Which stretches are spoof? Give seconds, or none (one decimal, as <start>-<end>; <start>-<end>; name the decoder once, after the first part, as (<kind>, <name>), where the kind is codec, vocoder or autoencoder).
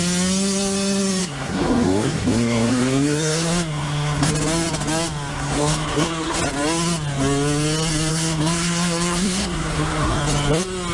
1.2-4.3 (codec, SNAC); 5.3-6.4; 8.1-10.2